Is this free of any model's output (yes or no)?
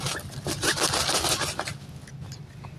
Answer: yes